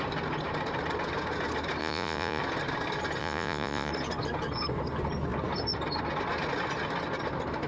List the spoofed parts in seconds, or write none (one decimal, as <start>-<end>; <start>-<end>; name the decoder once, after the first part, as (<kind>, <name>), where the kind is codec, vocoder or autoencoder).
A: 1.8-2.4 (vocoder, Vocos); 3.2-3.9